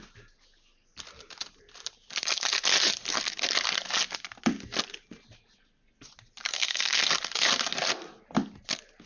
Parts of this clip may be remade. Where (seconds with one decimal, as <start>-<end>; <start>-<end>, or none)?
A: 6.5-7.1